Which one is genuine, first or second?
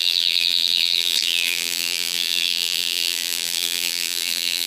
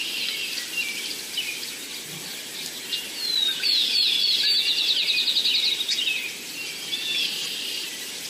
second